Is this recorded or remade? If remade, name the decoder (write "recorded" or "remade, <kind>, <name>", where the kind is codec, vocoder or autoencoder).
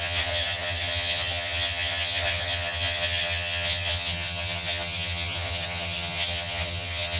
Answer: remade, vocoder, HiFi-GAN